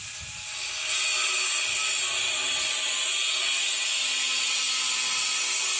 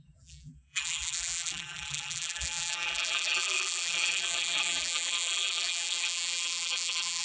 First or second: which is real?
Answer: first